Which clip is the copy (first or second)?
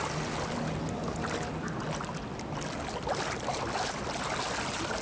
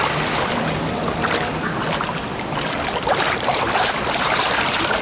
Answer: second